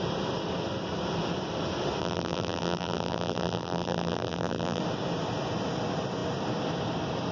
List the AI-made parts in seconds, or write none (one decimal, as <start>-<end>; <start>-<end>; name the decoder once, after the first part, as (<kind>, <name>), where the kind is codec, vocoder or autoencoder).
2.0-4.8 (vocoder, BigVGAN v2)